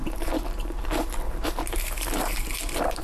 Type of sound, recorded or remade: remade